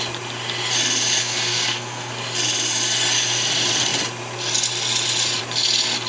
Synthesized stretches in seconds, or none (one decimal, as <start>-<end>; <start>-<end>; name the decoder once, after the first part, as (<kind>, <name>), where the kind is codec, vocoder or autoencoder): 1.2-2.1 (codec, SNAC)